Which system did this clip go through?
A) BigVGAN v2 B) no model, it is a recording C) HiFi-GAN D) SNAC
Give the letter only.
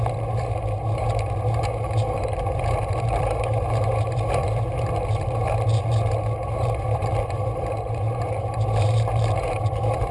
A